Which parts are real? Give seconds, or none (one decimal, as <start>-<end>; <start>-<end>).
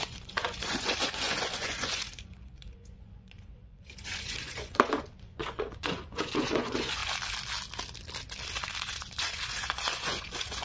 7.0-8.8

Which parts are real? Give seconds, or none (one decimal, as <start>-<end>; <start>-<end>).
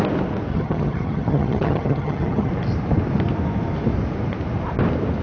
0.0-0.5; 2.5-5.2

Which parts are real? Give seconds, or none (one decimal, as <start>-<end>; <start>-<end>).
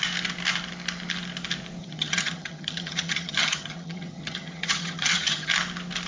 0.0-1.8; 5.5-6.1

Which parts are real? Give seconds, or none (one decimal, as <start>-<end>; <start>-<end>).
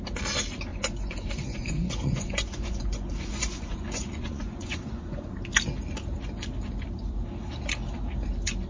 0.0-0.7; 5.3-8.7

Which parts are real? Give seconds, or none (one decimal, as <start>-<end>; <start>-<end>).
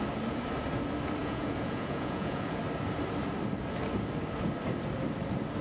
0.0-1.2; 2.6-5.6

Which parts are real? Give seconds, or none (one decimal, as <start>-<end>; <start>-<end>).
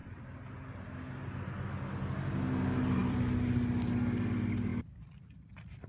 0.0-5.9